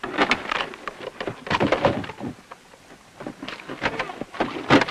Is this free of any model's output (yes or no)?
yes